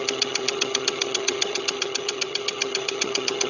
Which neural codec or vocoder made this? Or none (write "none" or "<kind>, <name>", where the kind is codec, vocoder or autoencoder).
vocoder, HiFi-GAN